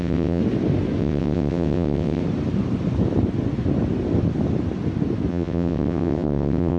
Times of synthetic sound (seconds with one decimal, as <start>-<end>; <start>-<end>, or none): 0.0-0.4; 1.0-2.2; 5.3-6.8